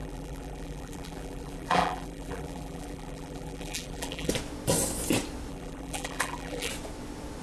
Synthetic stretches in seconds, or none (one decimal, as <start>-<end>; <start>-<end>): 0.0-4.3; 5.5-6.7